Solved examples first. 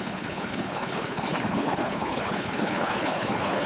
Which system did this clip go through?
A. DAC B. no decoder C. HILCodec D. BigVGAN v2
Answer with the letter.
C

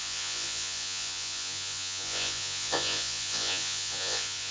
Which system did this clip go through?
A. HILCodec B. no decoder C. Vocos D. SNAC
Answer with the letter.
C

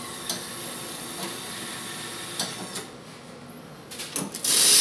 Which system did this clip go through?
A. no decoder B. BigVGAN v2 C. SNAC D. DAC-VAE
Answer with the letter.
A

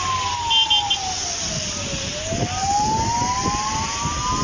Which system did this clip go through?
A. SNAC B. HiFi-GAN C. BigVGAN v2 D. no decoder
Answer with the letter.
D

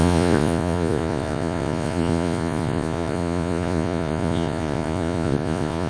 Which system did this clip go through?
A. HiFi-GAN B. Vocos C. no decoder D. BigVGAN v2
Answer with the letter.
B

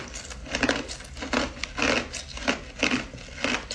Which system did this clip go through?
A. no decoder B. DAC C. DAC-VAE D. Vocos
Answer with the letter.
A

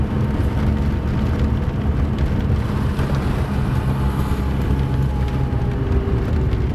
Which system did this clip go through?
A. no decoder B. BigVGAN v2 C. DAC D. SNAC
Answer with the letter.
A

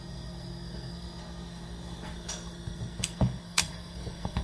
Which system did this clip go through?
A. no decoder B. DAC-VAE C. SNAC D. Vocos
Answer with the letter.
C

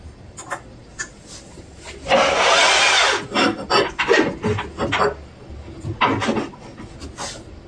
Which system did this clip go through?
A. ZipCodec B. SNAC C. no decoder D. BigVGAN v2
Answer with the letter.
C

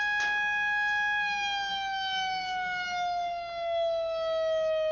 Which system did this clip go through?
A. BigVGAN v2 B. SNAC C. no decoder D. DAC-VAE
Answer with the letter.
C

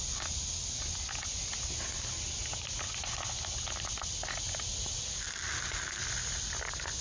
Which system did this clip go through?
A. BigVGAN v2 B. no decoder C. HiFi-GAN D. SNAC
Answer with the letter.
B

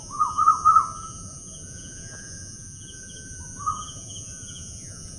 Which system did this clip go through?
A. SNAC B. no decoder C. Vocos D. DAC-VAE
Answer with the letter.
C